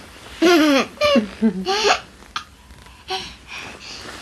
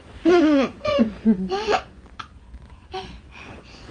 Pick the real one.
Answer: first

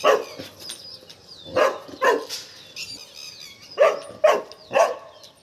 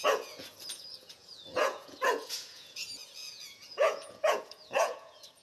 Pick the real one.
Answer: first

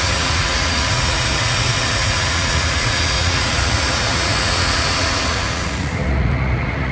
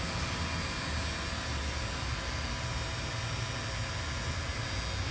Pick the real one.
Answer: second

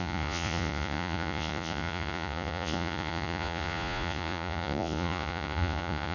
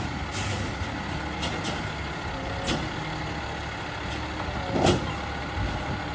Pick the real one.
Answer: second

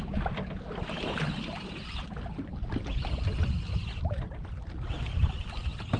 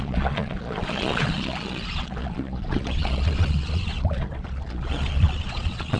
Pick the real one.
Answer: first